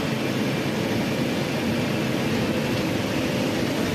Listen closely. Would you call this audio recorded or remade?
recorded